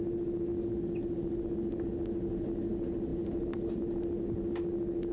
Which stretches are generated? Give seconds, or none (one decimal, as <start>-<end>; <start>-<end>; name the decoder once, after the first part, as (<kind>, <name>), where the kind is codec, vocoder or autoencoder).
none